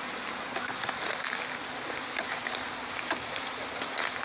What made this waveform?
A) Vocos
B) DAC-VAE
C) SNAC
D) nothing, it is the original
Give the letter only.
D